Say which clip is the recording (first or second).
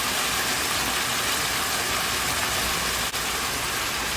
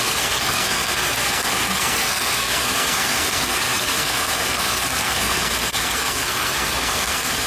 first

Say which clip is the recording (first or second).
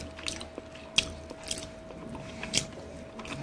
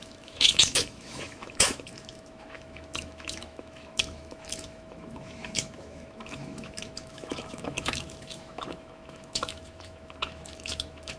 first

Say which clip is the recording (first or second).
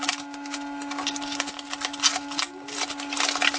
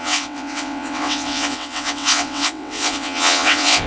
first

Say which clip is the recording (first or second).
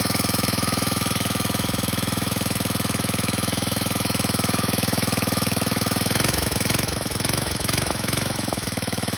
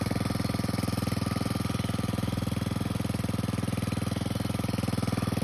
second